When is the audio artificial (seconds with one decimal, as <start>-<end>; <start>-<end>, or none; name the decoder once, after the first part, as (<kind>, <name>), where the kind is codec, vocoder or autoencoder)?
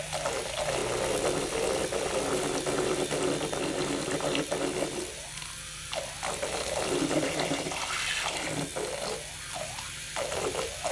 none